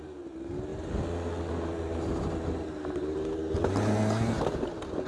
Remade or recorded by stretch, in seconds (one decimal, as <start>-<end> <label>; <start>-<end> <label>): 0.0-5.1 recorded

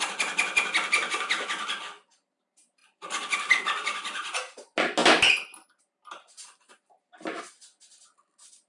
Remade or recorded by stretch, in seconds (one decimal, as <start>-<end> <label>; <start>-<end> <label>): 0.0-8.7 recorded

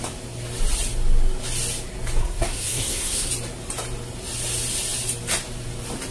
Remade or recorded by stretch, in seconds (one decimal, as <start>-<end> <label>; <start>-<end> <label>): 0.0-2.2 recorded; 2.2-3.3 remade; 3.3-6.1 recorded